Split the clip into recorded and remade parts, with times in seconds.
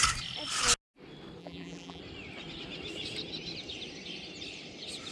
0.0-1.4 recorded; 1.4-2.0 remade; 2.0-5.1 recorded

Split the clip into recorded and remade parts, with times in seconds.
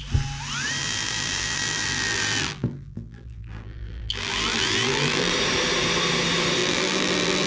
0.0-0.8 recorded; 0.8-5.3 remade; 5.3-6.6 recorded; 6.6-7.5 remade